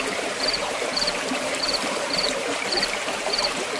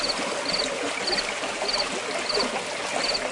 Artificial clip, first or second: first